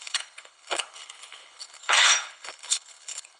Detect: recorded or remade remade